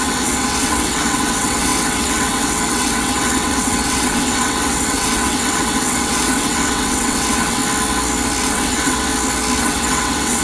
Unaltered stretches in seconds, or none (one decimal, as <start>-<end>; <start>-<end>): 7.6-8.4; 9.1-9.6